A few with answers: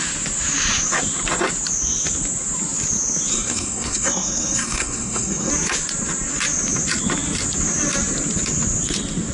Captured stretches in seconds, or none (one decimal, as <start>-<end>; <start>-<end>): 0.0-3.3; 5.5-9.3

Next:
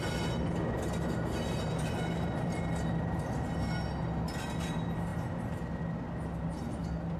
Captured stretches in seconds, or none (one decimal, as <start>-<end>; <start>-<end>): 0.0-7.2

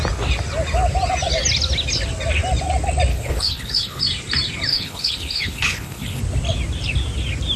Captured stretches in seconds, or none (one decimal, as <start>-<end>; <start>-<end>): 0.0-3.1; 4.0-4.7; 6.2-7.6